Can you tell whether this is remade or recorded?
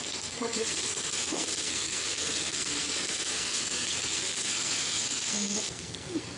remade